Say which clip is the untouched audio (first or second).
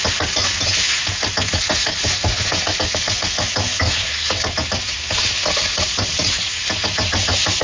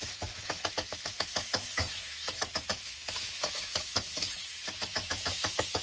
first